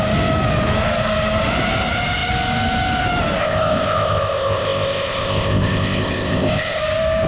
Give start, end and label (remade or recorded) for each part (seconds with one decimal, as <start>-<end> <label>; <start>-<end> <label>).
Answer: 0.0-3.4 recorded; 3.4-6.8 remade; 6.8-7.3 recorded